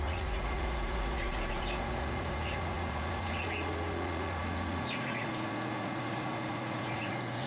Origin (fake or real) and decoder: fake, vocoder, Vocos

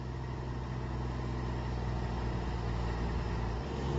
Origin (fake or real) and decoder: real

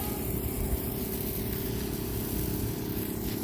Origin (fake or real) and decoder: real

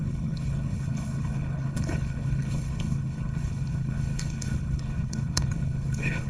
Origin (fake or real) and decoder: fake, codec, HILCodec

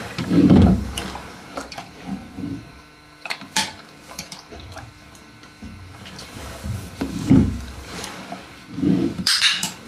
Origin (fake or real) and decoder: fake, codec, DAC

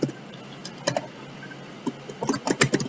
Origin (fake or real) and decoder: real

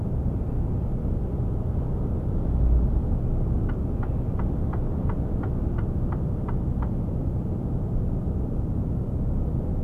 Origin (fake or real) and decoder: real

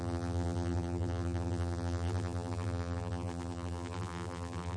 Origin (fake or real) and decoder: fake, vocoder, BigVGAN v2